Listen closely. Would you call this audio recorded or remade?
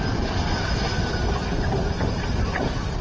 recorded